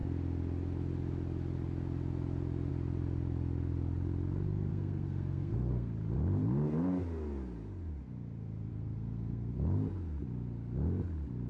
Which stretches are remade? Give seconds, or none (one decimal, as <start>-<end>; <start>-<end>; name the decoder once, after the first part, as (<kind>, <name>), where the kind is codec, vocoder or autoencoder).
4.7-5.9 (codec, SNAC); 8.7-9.5